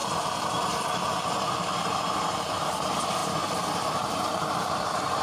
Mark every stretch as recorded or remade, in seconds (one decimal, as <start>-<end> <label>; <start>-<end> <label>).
0.0-2.0 recorded; 2.0-5.2 remade